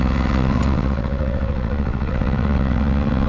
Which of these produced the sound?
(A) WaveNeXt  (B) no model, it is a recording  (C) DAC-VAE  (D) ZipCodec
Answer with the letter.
A